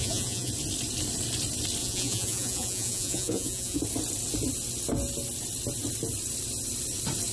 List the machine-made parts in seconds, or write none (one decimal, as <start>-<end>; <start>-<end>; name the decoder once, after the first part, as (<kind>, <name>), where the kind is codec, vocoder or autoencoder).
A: 0.0-0.5 (vocoder, Vocos); 1.8-3.8